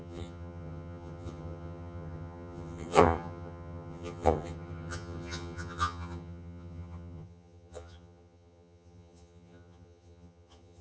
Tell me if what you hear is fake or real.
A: fake